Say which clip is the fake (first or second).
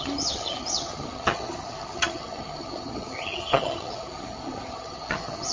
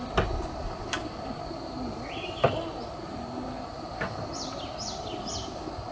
first